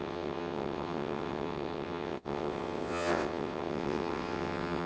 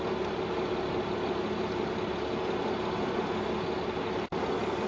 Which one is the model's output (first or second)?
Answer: first